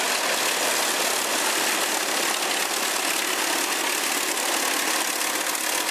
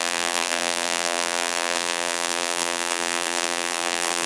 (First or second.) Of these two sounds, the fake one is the second